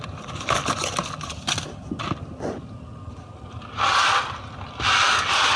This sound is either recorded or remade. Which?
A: recorded